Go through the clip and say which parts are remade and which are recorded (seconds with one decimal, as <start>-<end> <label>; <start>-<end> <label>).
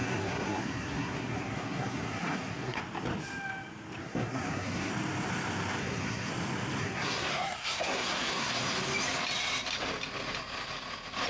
0.0-2.8 remade; 2.8-4.0 recorded; 4.0-4.9 remade; 4.9-5.8 recorded; 5.8-6.3 remade; 6.3-6.8 recorded; 6.8-8.5 remade; 8.5-11.3 recorded